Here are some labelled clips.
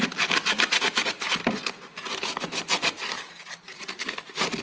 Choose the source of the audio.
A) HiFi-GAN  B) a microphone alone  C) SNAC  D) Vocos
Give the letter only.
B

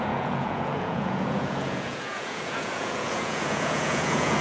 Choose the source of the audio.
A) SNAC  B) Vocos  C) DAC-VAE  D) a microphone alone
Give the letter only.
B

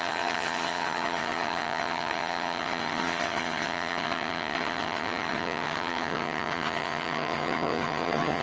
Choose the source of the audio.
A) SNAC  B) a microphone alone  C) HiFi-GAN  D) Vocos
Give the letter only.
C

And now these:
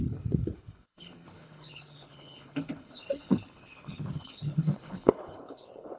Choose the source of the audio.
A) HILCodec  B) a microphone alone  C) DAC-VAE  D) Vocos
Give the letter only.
A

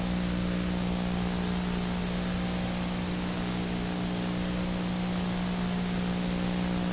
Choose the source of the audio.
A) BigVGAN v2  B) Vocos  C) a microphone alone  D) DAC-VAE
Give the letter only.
C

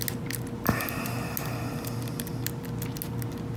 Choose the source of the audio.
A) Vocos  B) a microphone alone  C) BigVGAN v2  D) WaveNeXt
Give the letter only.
B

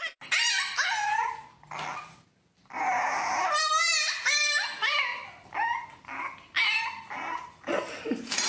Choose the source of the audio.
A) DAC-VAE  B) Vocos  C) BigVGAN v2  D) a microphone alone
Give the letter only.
D